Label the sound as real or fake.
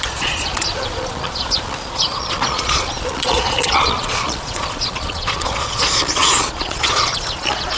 fake